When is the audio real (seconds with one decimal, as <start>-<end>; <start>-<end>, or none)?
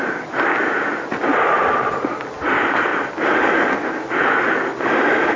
0.0-5.4